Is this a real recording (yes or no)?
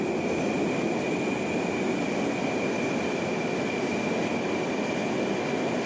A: yes